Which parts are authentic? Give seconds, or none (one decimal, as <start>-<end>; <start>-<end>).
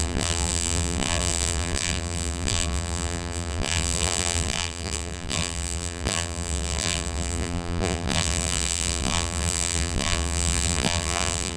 none